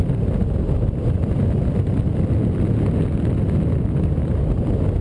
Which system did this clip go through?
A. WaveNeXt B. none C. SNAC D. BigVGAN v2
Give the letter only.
B